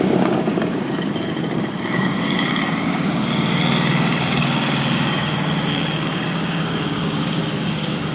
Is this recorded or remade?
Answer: remade